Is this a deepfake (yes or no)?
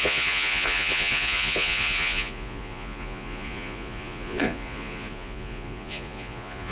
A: yes